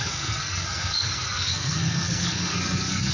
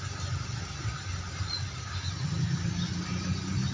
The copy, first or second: first